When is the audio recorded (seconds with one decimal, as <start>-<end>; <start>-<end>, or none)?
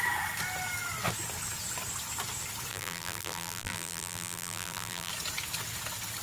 0.0-2.7; 5.1-6.2